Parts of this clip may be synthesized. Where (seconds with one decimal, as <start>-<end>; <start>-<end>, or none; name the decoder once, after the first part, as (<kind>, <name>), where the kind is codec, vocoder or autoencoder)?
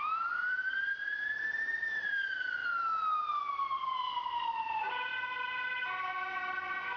0.0-2.6 (vocoder, BigVGAN v2); 3.4-5.1